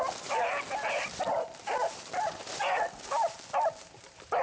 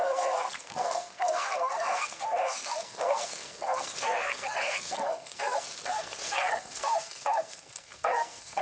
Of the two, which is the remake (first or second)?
second